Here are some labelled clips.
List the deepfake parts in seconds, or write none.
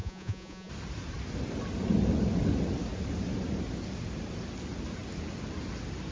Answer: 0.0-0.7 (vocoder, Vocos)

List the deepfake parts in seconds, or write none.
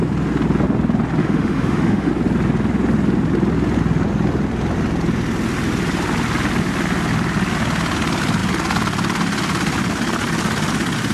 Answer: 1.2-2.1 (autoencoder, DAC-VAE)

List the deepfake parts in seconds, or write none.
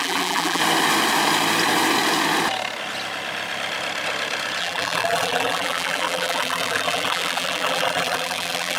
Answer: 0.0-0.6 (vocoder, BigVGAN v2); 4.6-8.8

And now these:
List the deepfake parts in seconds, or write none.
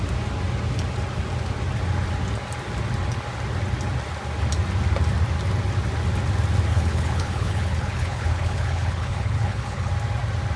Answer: 6.7-9.9 (codec, HILCodec)